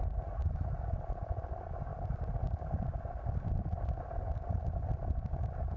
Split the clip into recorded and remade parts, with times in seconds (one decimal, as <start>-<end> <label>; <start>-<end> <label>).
0.0-5.8 recorded